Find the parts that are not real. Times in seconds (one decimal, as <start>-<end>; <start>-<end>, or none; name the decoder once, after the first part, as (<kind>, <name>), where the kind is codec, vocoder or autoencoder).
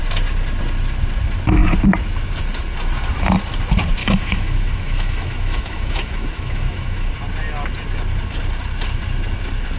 4.0-7.1 (autoencoder, DAC-VAE)